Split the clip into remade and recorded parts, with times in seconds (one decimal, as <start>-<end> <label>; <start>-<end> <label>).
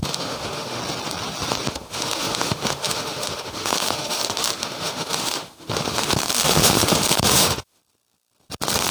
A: 0.0-0.8 remade; 0.8-1.7 recorded; 1.7-7.8 remade; 7.8-8.9 recorded